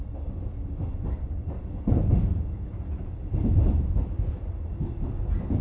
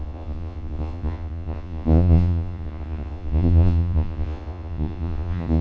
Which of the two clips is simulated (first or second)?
second